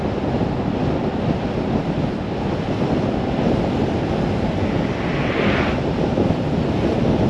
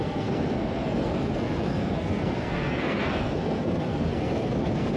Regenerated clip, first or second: second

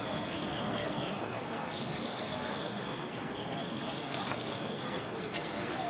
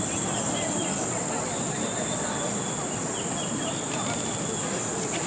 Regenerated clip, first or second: first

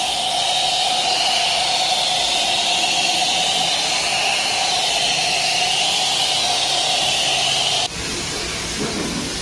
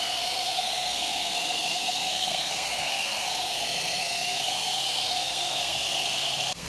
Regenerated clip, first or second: second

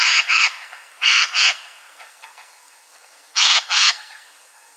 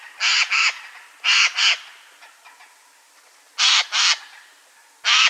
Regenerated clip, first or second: first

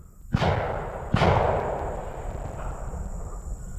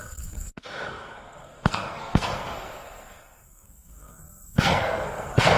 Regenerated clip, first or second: second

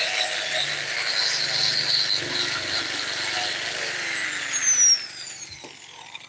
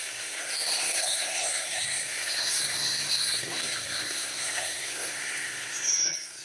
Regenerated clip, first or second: second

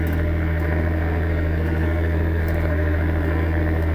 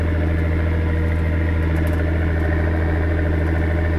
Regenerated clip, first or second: first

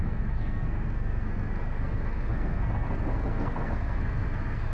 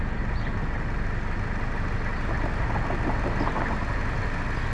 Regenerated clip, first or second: first